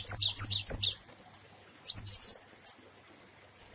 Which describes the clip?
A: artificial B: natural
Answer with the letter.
B